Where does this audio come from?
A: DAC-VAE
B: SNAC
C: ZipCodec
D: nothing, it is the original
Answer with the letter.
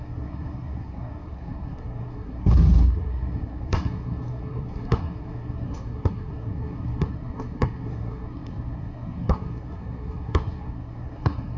B